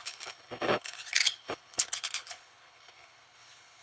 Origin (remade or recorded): remade